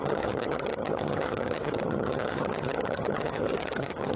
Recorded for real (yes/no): no